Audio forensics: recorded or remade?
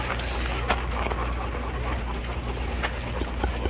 recorded